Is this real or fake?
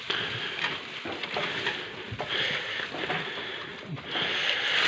real